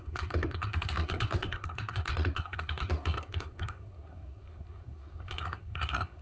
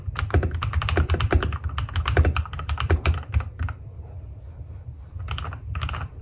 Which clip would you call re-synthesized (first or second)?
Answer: first